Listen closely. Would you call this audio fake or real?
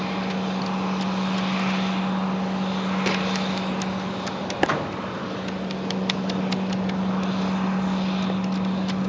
real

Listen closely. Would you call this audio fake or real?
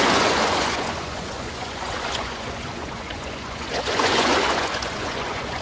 fake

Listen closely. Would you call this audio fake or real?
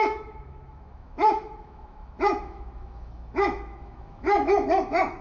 fake